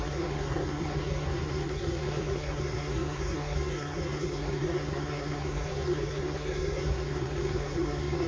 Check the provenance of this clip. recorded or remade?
remade